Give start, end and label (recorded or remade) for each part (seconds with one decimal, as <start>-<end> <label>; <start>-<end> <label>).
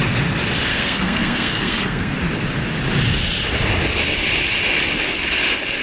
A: 0.0-0.7 recorded; 0.7-2.1 remade; 2.1-5.8 recorded